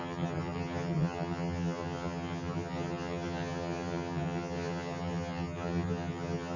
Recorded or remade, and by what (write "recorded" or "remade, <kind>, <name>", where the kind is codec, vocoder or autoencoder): remade, vocoder, HiFi-GAN